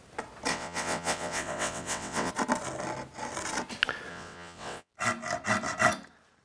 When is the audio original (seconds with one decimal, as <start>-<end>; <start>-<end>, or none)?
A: 0.0-0.5; 2.3-4.1; 4.9-6.4